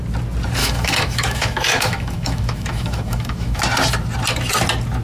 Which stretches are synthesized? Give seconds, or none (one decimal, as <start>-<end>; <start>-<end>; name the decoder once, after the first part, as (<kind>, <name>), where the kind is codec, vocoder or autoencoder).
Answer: 0.6-3.6 (autoencoder, DAC-VAE)